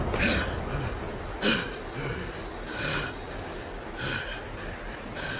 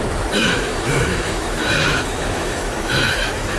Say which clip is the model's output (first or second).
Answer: second